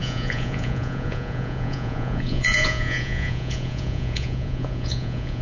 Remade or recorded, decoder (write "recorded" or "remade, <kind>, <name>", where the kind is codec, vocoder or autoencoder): remade, vocoder, Vocos